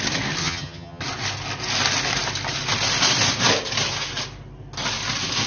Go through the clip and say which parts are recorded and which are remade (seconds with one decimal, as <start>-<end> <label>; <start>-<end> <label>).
0.0-0.4 recorded; 0.4-1.0 remade; 1.0-5.5 recorded